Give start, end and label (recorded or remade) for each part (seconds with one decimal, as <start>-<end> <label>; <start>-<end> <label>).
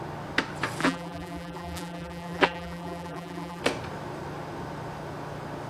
0.0-0.8 recorded; 0.8-3.6 remade; 3.6-5.7 recorded